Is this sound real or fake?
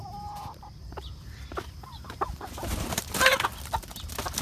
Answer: real